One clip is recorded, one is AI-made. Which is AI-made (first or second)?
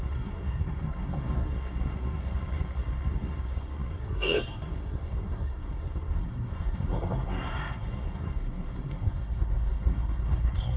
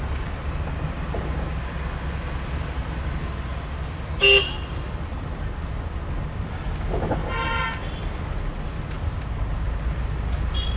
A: first